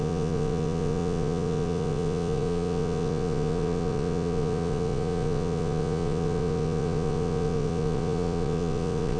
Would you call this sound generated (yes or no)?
yes